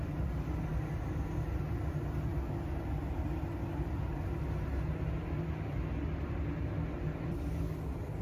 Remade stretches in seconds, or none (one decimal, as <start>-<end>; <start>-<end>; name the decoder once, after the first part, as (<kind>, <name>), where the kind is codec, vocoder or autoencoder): none